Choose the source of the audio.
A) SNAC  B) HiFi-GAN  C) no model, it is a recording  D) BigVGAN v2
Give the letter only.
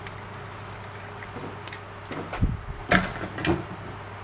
C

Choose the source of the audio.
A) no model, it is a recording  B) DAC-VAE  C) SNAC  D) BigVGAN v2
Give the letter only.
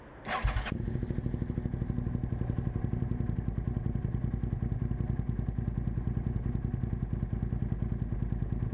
A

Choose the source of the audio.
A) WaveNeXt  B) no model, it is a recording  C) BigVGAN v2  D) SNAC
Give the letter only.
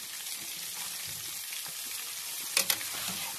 B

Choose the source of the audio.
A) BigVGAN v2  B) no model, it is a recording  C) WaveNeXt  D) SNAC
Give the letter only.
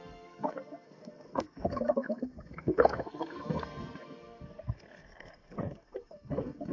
D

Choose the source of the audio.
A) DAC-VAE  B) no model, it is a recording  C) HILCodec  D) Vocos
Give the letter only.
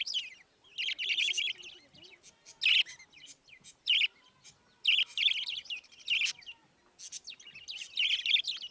B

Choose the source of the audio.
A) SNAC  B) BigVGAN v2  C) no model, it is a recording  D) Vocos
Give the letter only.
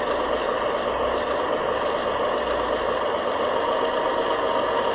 C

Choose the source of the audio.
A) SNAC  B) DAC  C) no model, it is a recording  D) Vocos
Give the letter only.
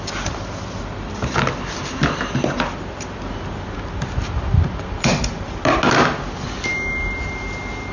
C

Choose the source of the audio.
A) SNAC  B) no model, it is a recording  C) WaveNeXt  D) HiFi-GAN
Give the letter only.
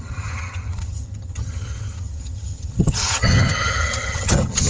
D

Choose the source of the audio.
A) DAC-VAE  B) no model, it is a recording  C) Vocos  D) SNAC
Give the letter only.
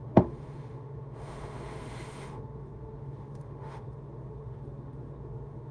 A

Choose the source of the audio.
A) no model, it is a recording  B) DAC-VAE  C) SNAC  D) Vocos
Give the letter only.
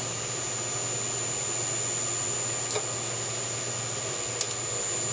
A